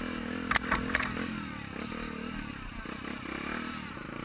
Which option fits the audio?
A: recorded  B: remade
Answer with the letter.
A